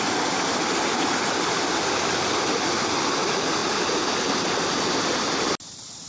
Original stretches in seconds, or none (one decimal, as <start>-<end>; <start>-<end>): 0.0-6.1